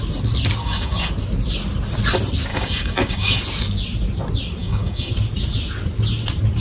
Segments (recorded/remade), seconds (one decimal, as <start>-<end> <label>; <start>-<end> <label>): 0.0-0.6 recorded; 0.6-1.1 remade; 1.1-2.5 recorded; 2.5-3.4 remade; 3.4-4.6 recorded; 4.6-5.1 remade; 5.1-6.6 recorded